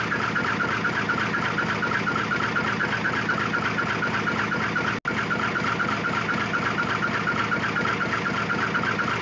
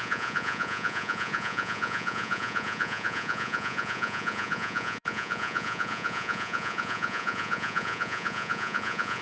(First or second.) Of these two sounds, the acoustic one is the first